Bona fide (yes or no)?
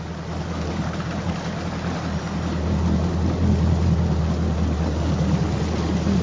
yes